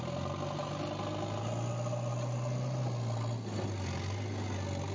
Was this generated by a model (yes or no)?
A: no